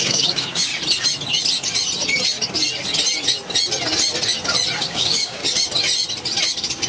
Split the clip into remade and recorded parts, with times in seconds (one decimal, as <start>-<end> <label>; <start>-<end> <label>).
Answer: 0.0-0.7 remade; 0.7-4.8 recorded; 4.8-5.4 remade; 5.4-6.9 recorded